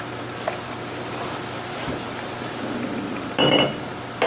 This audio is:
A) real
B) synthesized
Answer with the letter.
A